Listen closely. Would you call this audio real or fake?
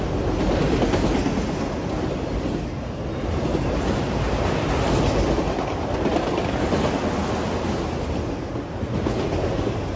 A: real